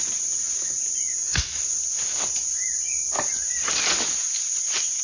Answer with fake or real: real